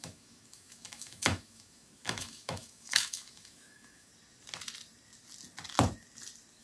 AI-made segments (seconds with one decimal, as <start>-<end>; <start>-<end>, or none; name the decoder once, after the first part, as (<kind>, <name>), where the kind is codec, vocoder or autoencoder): 0.0-4.1 (autoencoder, DAC-VAE)